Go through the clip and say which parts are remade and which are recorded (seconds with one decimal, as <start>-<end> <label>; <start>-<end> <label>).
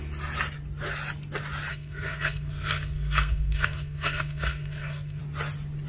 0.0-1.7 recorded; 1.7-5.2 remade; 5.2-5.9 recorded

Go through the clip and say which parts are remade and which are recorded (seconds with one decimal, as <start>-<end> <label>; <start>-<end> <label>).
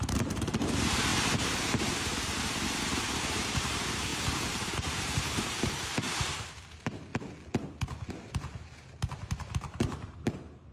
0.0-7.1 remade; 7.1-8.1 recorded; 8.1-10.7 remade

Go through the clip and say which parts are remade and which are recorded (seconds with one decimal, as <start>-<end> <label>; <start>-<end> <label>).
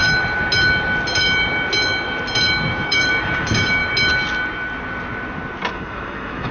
0.0-2.7 recorded; 2.7-3.8 remade; 3.8-5.7 recorded; 5.7-6.5 remade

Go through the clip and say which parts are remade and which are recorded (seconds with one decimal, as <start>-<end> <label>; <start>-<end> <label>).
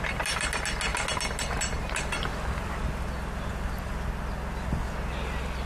0.0-5.7 recorded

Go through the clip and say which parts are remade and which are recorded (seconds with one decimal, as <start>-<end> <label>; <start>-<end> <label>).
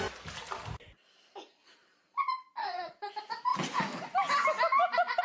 0.0-2.6 recorded; 2.6-3.1 remade; 3.1-5.2 recorded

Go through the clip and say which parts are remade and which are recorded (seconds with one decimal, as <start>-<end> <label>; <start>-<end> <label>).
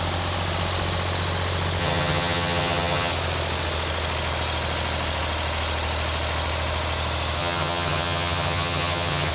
0.0-1.8 recorded; 1.8-3.1 remade; 3.1-7.4 recorded; 7.4-9.3 remade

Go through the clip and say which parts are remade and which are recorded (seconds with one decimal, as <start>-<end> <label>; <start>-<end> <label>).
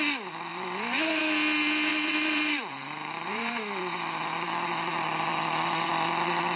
0.0-0.5 recorded; 0.5-1.2 remade; 1.2-1.9 recorded; 1.9-5.9 remade; 5.9-6.6 recorded